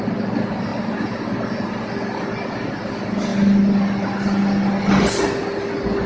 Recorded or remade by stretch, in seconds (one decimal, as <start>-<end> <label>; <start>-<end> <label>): 0.0-6.1 recorded